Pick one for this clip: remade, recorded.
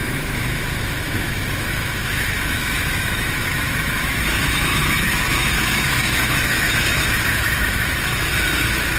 remade